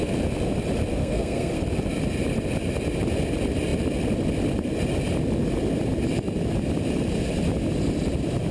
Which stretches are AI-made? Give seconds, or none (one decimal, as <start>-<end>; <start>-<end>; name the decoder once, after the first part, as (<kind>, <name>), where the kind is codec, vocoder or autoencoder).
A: 1.0-1.6 (codec, SNAC)